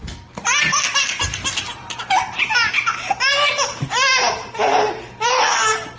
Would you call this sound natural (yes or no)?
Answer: yes